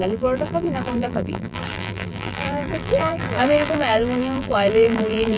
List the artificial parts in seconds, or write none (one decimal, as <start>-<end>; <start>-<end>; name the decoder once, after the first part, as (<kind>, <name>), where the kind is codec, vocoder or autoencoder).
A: 0.0-5.4 (vocoder, BigVGAN v2)